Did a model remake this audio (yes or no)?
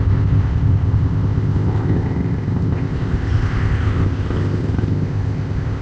yes